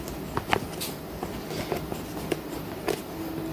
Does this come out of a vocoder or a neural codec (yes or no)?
no